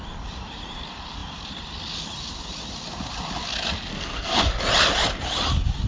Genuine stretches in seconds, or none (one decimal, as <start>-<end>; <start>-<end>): 0.0-3.9; 4.4-5.9